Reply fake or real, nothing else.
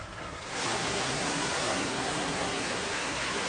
fake